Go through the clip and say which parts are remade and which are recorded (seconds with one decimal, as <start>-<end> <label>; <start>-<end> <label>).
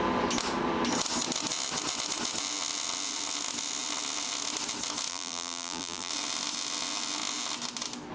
0.0-5.1 recorded; 5.1-6.1 remade; 6.1-8.1 recorded